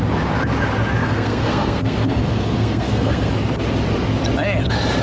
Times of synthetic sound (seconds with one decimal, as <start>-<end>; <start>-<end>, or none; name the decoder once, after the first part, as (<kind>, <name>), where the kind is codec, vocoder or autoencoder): 1.0-3.3 (codec, SNAC)